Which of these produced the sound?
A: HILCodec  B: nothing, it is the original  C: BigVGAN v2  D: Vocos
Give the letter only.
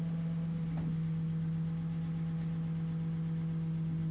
B